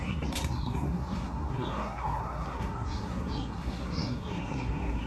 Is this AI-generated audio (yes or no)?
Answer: yes